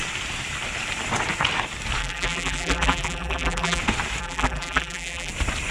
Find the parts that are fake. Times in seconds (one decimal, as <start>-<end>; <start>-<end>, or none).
2.0-3.8; 4.2-5.3